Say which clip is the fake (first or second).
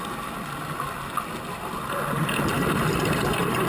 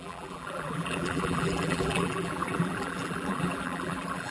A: second